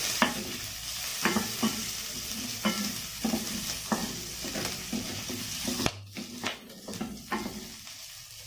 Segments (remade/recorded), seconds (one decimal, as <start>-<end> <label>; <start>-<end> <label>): 0.0-1.1 recorded; 1.1-2.4 remade; 2.4-4.0 recorded; 4.0-5.9 remade; 5.9-8.5 recorded